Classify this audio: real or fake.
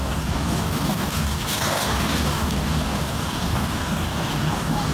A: fake